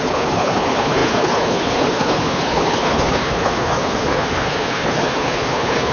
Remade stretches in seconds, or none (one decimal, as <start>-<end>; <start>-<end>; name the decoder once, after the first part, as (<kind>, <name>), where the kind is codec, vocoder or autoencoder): 0.0-5.9 (codec, HILCodec)